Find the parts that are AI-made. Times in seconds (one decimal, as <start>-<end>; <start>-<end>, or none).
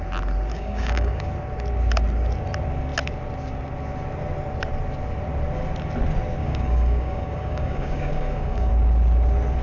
0.5-1.3; 6.4-8.7